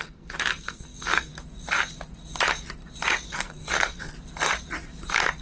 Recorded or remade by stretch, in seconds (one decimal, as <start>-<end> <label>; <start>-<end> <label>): 0.0-1.3 remade; 1.3-3.3 recorded; 3.3-4.1 remade; 4.1-5.4 recorded